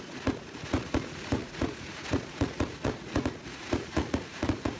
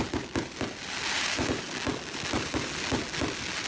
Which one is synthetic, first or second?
first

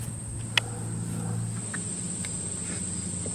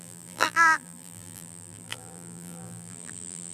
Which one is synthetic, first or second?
second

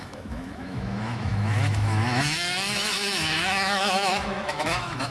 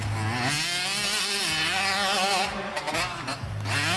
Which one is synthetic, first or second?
first